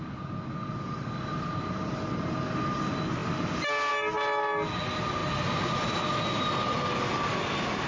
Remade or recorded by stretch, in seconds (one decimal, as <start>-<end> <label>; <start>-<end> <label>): 0.0-7.9 recorded